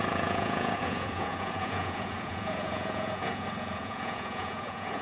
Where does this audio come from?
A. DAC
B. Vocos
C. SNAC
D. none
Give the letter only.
B